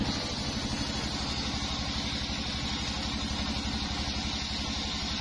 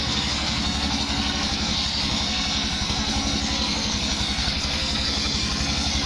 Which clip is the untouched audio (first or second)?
first